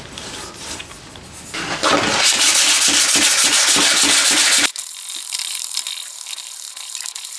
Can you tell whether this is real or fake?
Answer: real